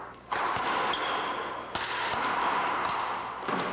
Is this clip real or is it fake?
real